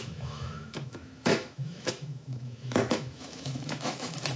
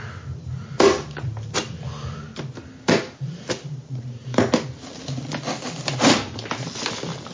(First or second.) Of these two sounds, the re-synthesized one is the first